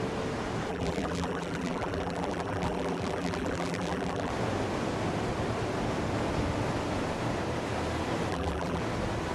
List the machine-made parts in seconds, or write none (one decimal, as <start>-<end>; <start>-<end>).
0.7-4.3; 8.3-8.8